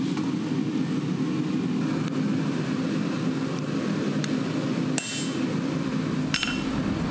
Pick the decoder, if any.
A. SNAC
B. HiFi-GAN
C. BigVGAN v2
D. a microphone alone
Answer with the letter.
D